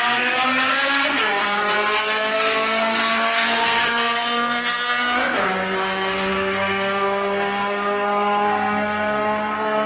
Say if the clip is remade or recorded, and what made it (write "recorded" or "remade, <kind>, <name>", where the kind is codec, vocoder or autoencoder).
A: remade, codec, SNAC